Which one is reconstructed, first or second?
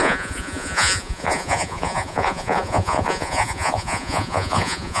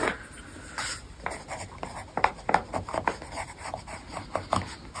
first